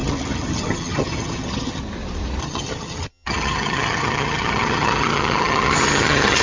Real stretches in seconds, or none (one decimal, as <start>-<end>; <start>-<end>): 1.8-2.4